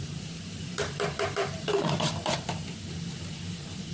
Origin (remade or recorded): remade